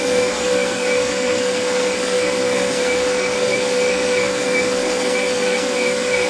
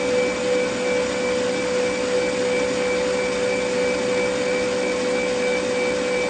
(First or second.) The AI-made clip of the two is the first